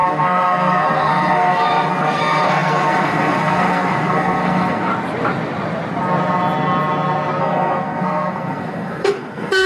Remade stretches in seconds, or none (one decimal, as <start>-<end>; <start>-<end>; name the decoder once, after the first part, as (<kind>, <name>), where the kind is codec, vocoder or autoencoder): 0.0-4.9 (codec, SNAC); 7.4-9.7